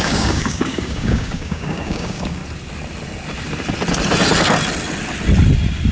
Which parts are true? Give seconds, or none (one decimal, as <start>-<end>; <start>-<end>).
2.4-5.9